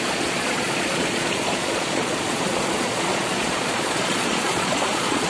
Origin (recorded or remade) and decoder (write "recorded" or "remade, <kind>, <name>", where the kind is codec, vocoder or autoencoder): remade, vocoder, Vocos